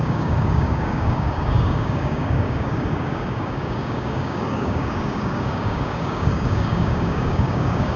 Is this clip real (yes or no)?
no